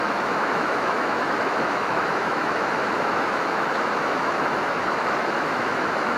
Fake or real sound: fake